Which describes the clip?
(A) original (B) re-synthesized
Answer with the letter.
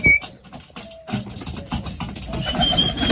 A